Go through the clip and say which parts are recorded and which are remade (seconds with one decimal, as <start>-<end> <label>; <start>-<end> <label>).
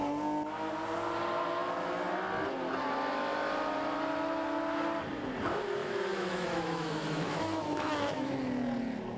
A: 0.0-5.8 recorded; 5.8-8.4 remade; 8.4-9.2 recorded